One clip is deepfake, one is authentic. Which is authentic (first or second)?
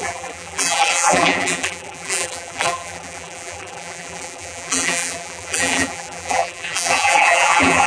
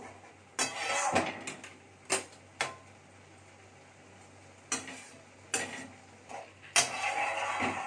second